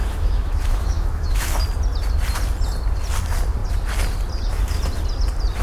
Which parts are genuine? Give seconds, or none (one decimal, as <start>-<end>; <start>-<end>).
1.5-5.6